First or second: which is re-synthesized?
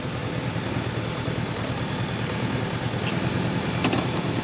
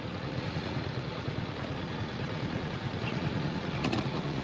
second